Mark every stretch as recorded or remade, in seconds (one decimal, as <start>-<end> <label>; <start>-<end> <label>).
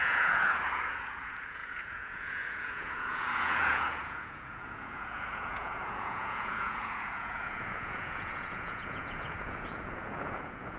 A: 0.0-10.8 remade